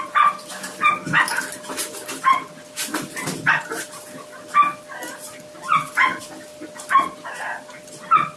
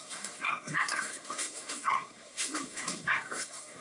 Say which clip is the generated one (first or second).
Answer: second